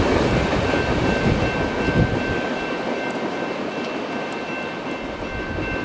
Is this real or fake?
real